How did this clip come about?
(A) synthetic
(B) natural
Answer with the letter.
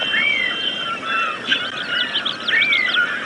B